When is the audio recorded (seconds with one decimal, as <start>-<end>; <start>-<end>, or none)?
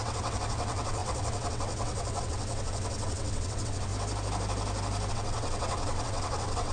3.9-5.1